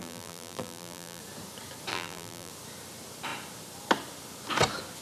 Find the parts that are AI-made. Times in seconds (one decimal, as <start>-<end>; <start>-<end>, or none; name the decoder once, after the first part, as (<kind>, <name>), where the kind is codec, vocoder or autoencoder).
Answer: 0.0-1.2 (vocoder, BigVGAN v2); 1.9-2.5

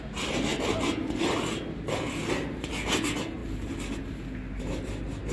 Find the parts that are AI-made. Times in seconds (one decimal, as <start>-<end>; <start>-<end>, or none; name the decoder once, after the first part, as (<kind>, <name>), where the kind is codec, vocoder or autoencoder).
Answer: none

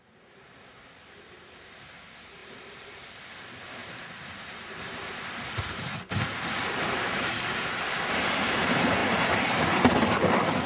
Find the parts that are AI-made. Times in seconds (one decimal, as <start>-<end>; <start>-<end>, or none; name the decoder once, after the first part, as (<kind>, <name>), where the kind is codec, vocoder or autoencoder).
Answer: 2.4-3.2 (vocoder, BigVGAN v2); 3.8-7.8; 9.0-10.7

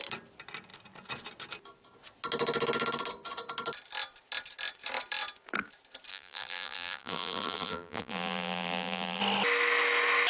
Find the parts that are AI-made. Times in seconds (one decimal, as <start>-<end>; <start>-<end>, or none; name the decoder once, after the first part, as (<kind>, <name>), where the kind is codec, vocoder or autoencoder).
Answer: 6.1-9.2 (vocoder, BigVGAN v2)

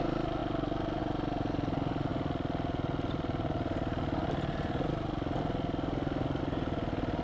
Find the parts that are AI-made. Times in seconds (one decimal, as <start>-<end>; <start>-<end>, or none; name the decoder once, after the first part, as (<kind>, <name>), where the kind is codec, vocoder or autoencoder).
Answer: none